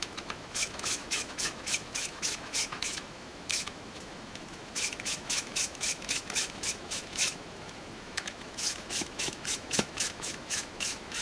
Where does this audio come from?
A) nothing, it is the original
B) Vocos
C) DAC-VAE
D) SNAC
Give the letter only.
C